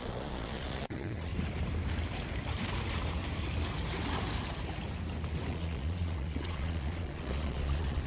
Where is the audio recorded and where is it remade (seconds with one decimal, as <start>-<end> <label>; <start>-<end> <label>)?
0.0-1.3 remade; 1.3-5.5 recorded; 5.5-8.1 remade

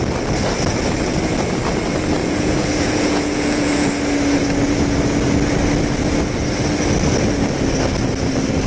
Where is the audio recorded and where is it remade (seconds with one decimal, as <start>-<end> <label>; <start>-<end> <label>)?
0.0-2.2 recorded; 2.2-3.9 remade; 3.9-8.7 recorded

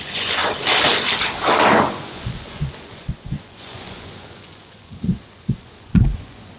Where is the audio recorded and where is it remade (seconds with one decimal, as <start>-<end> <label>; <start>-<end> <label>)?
0.0-0.4 remade; 0.4-1.9 recorded; 1.9-6.6 remade

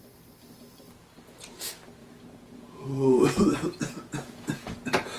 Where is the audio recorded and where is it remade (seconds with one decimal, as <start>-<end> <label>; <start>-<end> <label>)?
0.0-2.0 recorded; 2.0-5.2 remade

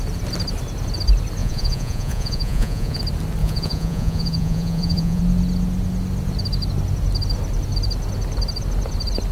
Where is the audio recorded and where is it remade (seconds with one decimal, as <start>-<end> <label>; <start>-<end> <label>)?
0.0-1.4 recorded; 1.4-3.0 remade; 3.0-3.4 recorded; 3.4-5.2 remade; 5.2-9.3 recorded

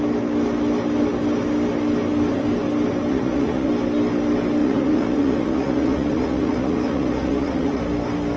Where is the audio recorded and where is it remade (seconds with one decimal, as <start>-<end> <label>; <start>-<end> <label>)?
0.0-3.1 recorded; 3.1-3.7 remade; 3.7-4.6 recorded; 4.6-7.8 remade; 7.8-8.4 recorded